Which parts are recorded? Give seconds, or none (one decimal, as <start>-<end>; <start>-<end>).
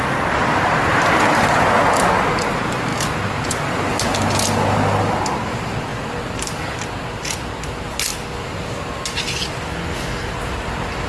0.0-0.5; 1.6-11.1